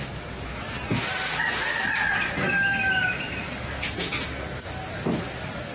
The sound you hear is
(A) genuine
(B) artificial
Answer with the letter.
A